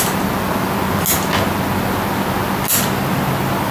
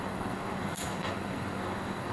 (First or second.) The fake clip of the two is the second